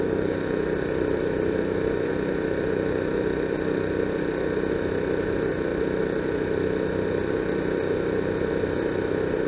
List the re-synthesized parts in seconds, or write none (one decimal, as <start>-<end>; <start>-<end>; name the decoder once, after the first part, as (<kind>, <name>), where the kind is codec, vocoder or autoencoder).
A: none